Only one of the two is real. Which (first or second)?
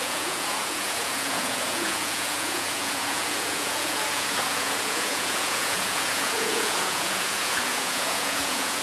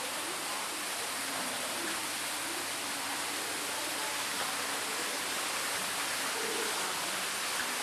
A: second